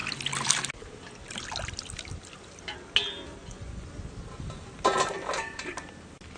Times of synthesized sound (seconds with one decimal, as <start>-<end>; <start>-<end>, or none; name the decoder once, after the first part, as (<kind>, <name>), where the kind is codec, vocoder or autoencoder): 3.4-3.9 (vocoder, Vocos)